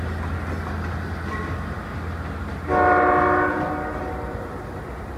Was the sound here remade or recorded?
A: recorded